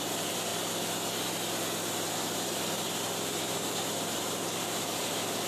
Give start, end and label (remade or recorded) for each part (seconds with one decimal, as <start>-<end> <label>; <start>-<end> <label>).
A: 0.0-0.5 remade; 0.5-1.9 recorded; 1.9-5.5 remade